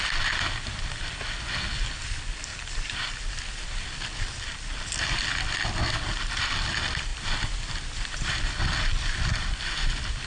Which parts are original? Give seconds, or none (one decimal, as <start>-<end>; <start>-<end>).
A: 0.0-2.5; 3.0-7.1; 8.6-10.3